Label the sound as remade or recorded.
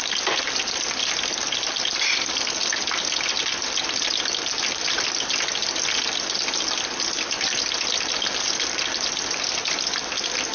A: recorded